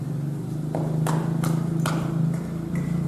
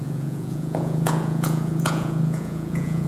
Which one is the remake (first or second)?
second